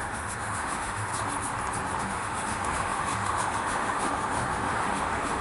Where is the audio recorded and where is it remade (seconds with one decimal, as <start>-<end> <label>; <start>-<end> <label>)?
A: 0.0-1.1 remade; 1.1-2.0 recorded; 2.0-5.4 remade